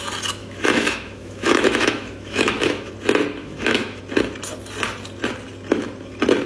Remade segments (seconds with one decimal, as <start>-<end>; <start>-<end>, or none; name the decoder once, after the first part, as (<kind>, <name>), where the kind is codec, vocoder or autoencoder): 0.4-2.9 (autoencoder, DAC-VAE); 3.4-4.0